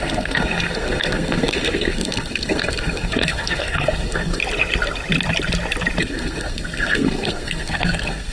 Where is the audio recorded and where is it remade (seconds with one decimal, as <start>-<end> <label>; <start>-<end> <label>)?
0.0-4.4 remade; 4.4-6.0 recorded; 6.0-8.3 remade